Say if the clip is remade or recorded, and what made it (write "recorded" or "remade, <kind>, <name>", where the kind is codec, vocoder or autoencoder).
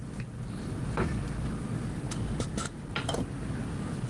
recorded